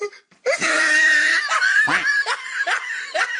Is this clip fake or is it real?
fake